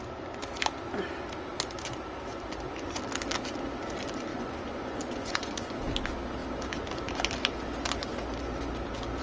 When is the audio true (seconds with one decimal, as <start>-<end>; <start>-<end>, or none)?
0.0-4.3; 5.8-9.2